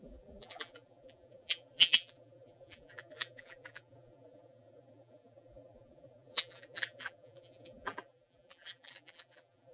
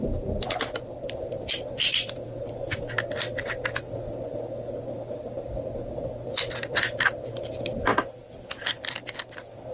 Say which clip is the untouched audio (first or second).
second